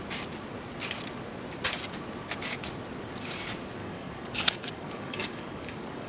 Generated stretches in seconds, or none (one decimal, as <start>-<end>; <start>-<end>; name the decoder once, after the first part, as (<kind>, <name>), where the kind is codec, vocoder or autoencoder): 3.8-6.1 (codec, DAC)